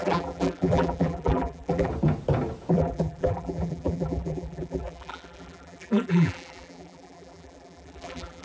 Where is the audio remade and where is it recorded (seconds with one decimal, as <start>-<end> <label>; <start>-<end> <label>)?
0.0-1.9 remade; 1.9-2.7 recorded; 2.7-8.4 remade